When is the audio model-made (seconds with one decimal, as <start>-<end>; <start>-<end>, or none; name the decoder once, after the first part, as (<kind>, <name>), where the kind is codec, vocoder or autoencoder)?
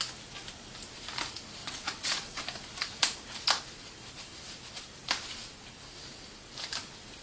1.6-2.4 (vocoder, WaveNeXt)